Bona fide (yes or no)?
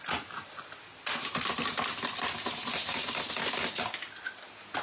yes